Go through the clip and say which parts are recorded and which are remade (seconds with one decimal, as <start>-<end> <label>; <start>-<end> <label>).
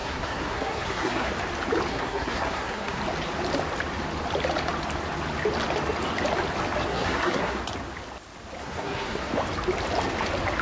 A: 0.0-1.3 remade; 1.3-1.9 recorded; 1.9-3.0 remade; 3.0-6.9 recorded; 6.9-7.6 remade; 7.6-8.6 recorded; 8.6-9.3 remade; 9.3-10.6 recorded